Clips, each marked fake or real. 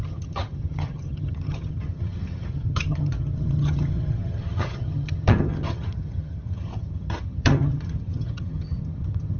fake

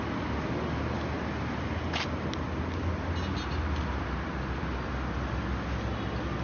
real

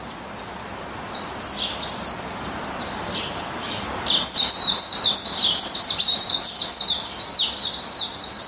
real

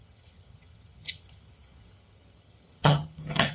fake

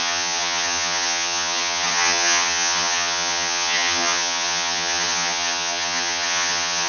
fake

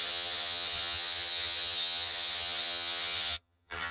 fake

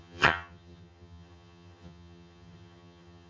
fake